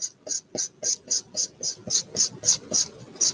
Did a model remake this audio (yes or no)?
no